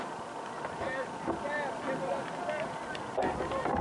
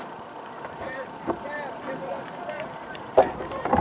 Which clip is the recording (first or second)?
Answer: first